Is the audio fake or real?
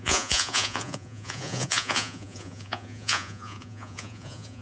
fake